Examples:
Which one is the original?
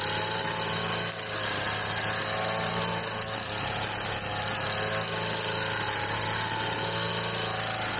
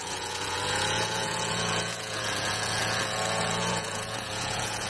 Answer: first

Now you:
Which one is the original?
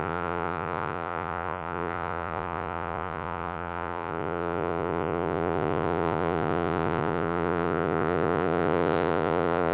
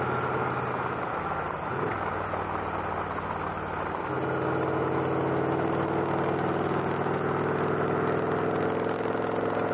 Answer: second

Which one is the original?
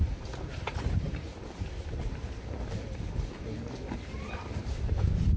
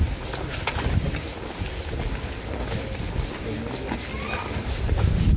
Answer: second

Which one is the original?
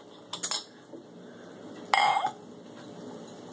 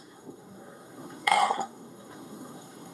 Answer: first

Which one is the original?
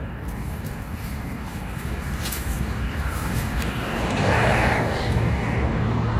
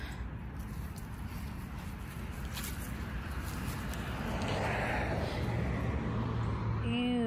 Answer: second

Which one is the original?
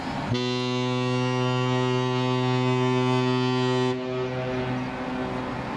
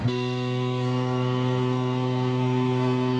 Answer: first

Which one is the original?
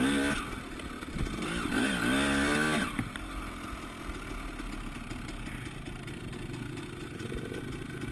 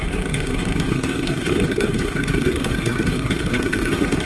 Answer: first